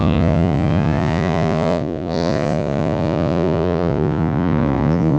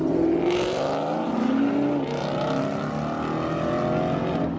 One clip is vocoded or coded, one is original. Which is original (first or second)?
second